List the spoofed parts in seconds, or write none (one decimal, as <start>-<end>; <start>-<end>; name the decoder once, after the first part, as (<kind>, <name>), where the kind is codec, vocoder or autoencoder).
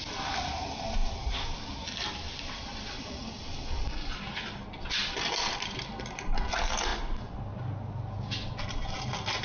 none